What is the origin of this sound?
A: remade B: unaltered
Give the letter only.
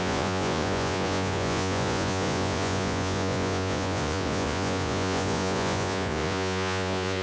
A